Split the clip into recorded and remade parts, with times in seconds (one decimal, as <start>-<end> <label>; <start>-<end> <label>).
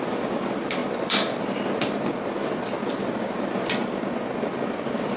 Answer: 0.0-5.2 recorded